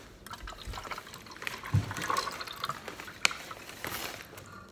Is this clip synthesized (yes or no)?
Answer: no